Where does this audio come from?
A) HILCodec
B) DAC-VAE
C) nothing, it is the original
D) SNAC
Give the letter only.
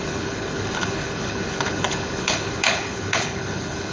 A